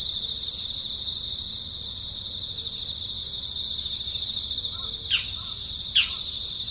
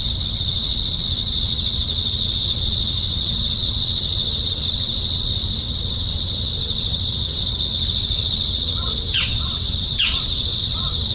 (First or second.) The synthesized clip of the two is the second